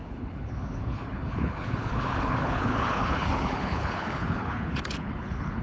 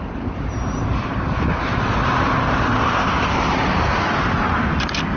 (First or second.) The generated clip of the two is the first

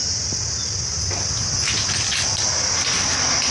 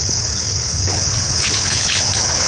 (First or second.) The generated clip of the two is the second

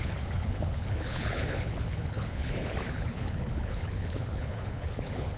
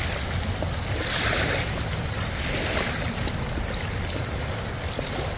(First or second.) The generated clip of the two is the first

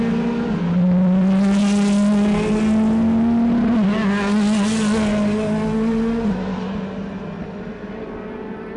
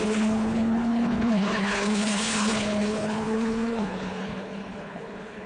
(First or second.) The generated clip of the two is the second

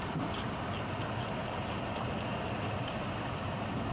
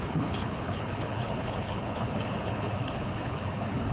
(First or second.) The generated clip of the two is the second